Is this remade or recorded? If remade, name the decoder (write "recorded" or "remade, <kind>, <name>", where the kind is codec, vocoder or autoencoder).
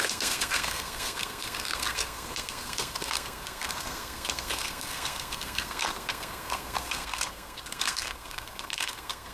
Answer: remade, codec, SNAC